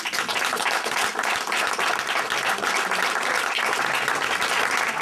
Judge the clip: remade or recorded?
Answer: recorded